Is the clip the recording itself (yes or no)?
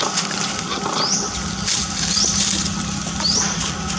yes